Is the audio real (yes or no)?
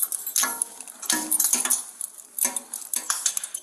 yes